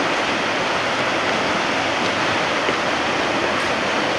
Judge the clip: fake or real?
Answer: real